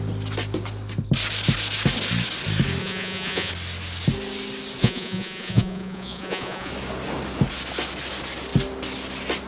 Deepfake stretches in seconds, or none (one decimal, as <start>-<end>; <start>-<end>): 2.8-3.5; 4.8-6.7